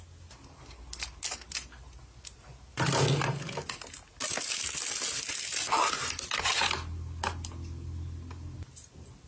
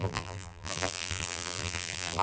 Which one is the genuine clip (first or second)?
first